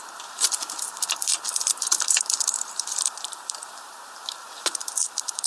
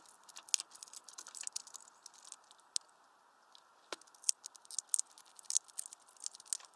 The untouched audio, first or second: second